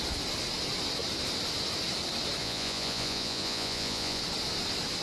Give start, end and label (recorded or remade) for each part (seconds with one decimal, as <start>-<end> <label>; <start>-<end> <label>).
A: 0.0-2.4 recorded; 2.4-4.2 remade; 4.2-5.0 recorded